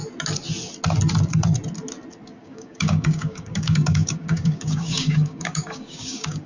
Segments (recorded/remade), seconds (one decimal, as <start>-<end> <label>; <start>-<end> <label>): 0.0-2.4 recorded; 2.4-6.5 remade